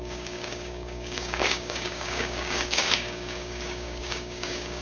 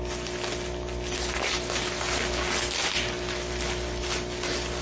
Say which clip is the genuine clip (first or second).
second